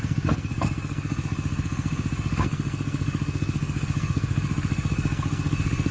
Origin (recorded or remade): remade